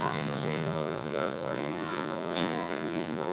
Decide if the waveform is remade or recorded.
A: remade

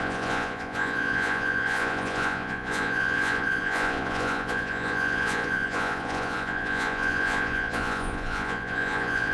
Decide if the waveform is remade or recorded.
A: remade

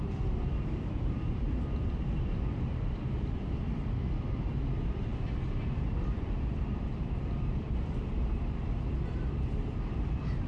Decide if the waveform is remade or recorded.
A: remade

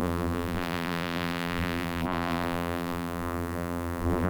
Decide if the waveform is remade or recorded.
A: remade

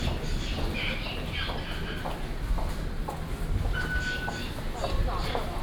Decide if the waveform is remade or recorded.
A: recorded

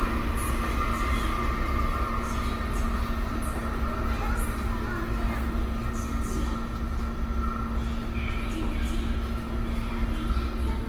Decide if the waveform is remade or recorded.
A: recorded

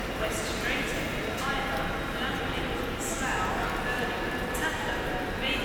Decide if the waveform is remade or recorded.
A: recorded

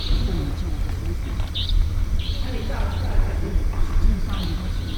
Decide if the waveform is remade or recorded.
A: remade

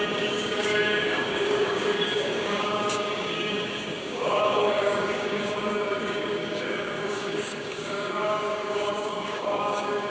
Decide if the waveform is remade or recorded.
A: remade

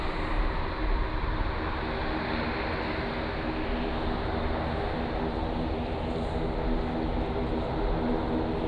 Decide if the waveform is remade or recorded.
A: recorded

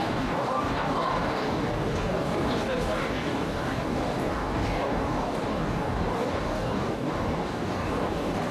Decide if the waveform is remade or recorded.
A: remade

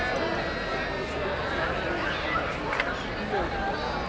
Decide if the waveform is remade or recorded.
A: recorded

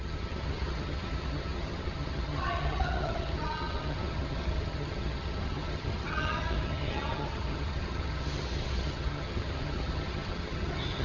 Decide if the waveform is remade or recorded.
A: remade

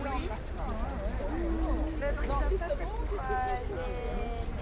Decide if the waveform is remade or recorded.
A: recorded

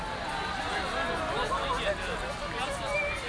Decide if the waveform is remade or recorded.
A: recorded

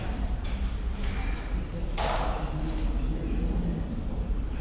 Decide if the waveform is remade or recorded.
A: remade